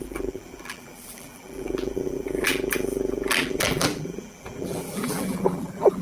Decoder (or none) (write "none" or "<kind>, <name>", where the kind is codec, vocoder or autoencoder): vocoder, BigVGAN v2